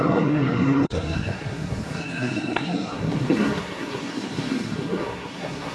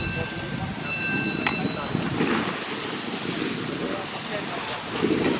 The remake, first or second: first